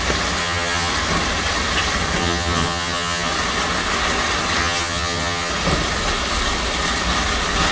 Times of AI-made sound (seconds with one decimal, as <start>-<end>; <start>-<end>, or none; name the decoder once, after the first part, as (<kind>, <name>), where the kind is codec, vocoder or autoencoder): 0.4-0.9 (vocoder, HiFi-GAN); 2.2-3.3; 4.6-5.5

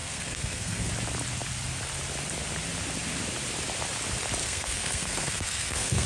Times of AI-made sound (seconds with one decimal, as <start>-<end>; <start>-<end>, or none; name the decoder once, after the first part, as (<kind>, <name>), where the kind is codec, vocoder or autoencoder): 0.0-0.9 (codec, SNAC); 4.4-6.1

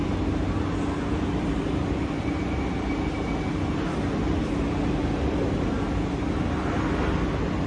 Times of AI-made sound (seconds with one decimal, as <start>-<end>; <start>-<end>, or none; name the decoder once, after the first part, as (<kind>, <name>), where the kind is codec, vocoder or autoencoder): none

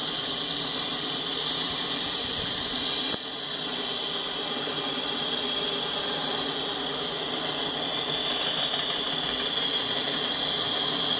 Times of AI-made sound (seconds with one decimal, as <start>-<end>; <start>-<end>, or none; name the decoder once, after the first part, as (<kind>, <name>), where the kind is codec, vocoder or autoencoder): none

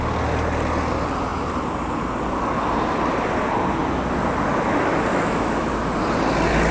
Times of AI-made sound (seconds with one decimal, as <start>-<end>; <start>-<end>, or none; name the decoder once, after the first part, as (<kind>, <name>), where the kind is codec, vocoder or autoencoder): 5.1-5.7 (autoencoder, DAC-VAE)

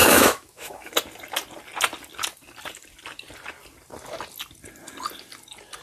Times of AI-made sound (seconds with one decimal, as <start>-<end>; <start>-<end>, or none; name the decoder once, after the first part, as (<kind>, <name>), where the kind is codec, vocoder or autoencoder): 0.0-0.9 (autoencoder, DAC-VAE)

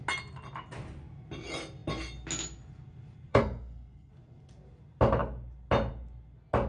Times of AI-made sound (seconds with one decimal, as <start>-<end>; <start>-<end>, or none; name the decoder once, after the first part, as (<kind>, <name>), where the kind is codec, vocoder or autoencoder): 3.3-4.1 (codec, SNAC)

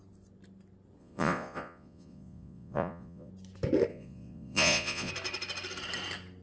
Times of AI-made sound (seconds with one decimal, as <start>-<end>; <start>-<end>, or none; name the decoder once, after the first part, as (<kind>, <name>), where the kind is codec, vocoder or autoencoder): 1.0-3.3 (vocoder, Vocos); 3.9-5.1